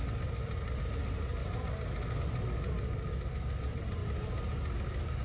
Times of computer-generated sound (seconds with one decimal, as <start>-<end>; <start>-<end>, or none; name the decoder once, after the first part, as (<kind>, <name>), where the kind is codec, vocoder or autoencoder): none